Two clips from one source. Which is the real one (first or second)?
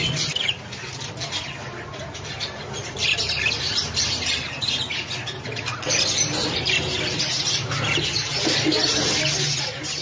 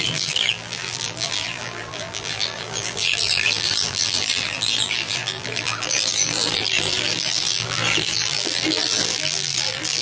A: first